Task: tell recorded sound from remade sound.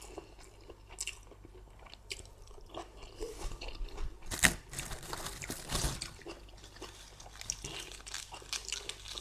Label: recorded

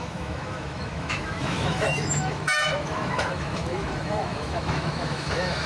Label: remade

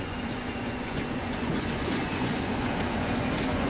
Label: remade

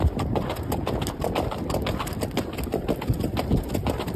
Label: recorded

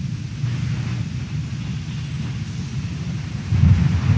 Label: recorded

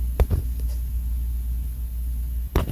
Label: recorded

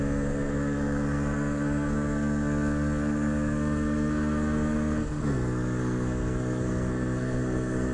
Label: remade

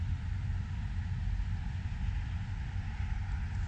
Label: recorded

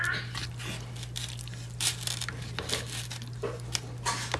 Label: recorded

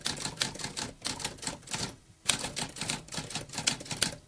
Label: recorded